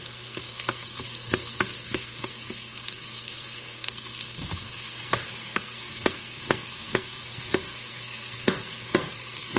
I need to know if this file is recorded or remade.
remade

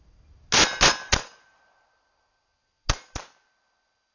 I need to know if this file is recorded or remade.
recorded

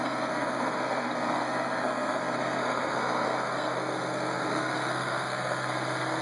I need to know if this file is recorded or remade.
remade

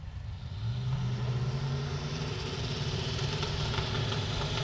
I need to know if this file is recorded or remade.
recorded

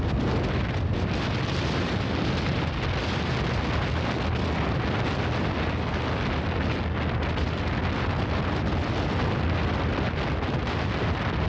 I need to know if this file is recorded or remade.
recorded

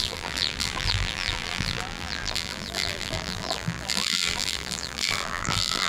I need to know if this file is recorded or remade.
remade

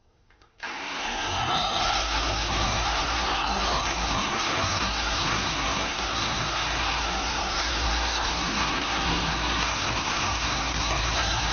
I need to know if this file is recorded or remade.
remade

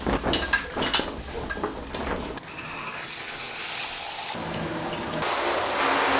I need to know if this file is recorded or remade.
recorded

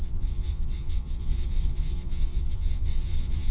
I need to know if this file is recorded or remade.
remade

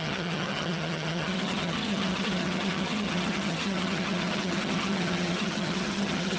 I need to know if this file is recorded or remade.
remade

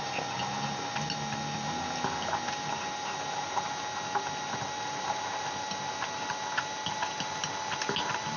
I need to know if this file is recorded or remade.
recorded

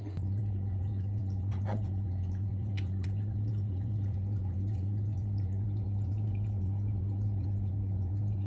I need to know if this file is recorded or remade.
remade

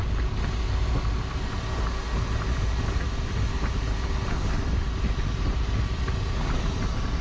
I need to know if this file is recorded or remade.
recorded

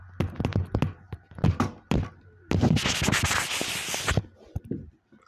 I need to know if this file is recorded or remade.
recorded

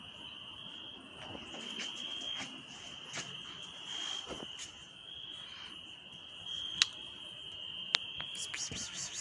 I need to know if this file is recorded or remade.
recorded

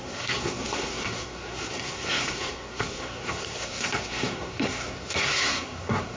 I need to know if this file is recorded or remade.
remade